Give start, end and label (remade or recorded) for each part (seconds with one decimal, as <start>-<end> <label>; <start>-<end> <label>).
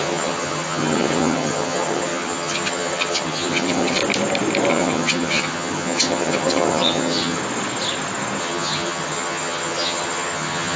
0.0-4.0 remade; 4.0-4.7 recorded; 4.7-7.4 remade; 7.4-8.4 recorded; 8.4-10.8 remade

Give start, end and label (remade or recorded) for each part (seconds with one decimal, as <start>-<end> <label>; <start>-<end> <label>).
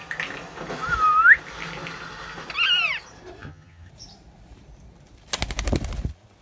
0.0-3.4 recorded; 3.4-3.9 remade; 3.9-6.4 recorded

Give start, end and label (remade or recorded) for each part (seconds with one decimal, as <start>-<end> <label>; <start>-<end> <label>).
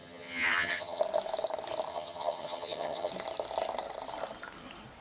0.0-1.0 remade; 1.0-1.9 recorded; 1.9-3.1 remade; 3.1-5.0 recorded